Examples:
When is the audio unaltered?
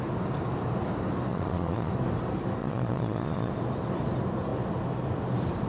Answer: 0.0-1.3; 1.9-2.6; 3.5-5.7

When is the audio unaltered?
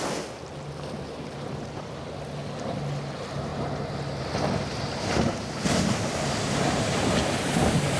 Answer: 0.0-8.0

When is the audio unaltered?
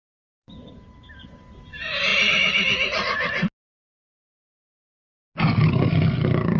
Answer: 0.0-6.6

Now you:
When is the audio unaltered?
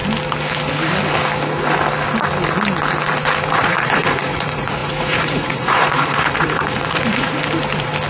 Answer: 0.0-3.5; 7.4-8.1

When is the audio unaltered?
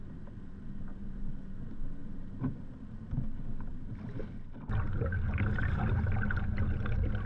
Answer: 0.0-7.3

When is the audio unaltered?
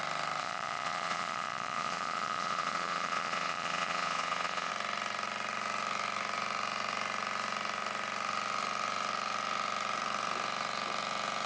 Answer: 0.0-0.4; 4.7-11.5